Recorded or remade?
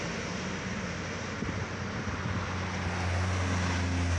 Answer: recorded